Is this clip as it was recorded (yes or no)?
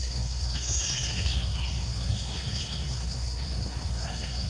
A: no